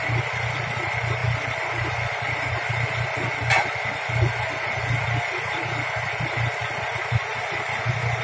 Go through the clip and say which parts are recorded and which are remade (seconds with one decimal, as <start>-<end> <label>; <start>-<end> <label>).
0.0-6.6 remade; 6.6-7.3 recorded; 7.3-8.2 remade